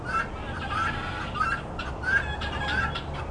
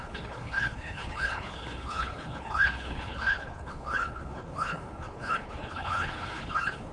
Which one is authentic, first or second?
first